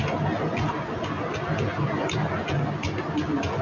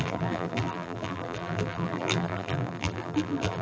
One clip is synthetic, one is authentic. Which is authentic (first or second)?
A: first